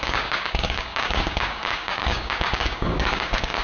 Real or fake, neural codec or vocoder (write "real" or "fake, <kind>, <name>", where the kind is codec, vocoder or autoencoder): fake, codec, DAC